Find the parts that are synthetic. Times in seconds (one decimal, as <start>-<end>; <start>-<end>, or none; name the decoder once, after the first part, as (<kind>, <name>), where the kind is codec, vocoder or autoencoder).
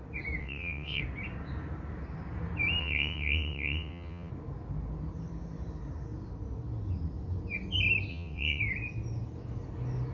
0.4-1.0 (vocoder, WaveNeXt); 2.8-4.3; 8.1-8.6